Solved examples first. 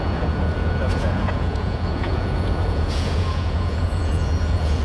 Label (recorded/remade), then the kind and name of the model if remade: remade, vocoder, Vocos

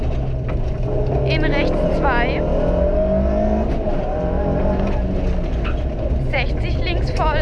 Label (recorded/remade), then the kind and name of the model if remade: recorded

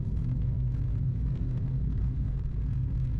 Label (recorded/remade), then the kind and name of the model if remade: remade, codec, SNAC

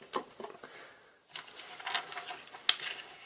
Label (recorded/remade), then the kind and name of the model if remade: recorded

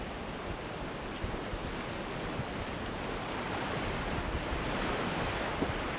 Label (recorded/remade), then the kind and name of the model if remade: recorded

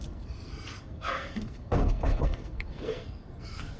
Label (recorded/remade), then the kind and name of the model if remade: remade, codec, SNAC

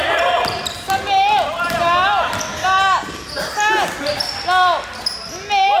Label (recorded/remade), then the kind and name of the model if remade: recorded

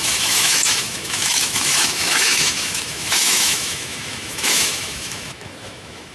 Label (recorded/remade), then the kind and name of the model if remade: remade, autoencoder, DAC-VAE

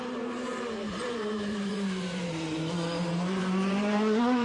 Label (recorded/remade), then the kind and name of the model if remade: remade, vocoder, BigVGAN v2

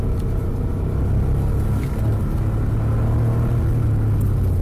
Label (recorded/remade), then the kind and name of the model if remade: recorded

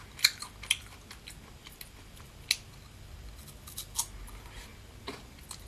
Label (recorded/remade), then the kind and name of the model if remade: recorded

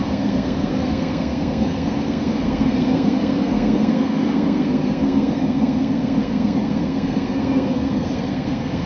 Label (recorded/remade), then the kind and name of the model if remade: remade, codec, SNAC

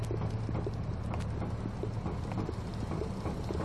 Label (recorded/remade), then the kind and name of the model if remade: recorded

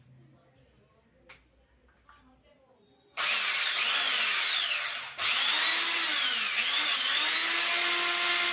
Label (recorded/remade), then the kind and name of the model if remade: recorded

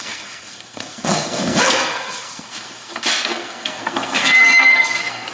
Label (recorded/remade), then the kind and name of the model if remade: remade, codec, SNAC